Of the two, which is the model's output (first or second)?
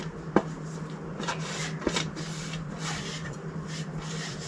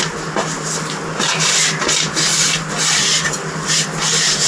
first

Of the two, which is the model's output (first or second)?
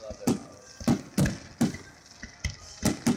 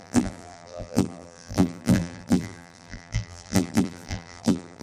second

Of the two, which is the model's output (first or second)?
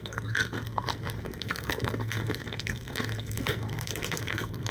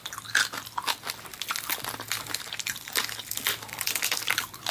first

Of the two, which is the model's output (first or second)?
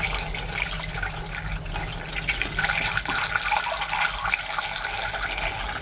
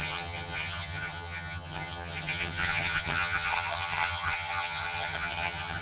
second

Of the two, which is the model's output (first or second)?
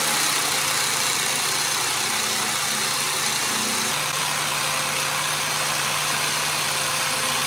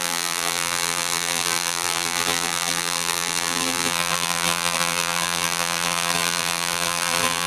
second